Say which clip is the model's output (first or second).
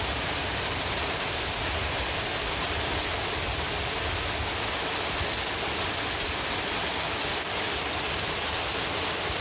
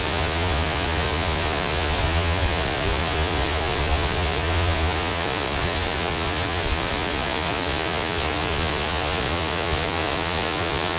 second